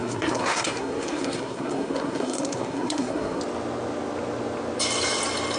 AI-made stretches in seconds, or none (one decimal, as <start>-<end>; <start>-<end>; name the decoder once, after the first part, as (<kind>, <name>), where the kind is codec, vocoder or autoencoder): 0.0-3.4 (codec, SNAC)